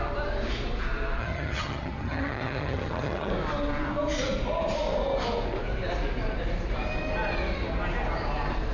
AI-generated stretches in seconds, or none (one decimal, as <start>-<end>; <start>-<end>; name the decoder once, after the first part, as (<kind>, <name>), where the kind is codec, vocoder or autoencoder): 1.2-3.3 (vocoder, HiFi-GAN)